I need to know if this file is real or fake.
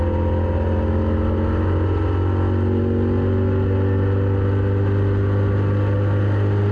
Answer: real